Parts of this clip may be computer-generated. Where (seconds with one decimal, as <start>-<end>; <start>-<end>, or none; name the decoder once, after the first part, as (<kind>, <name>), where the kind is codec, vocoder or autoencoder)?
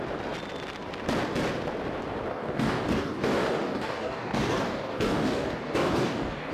2.3-6.5 (codec, DAC)